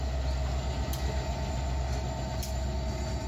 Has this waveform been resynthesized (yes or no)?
no